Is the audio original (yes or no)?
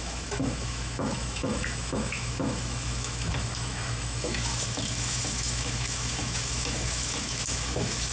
no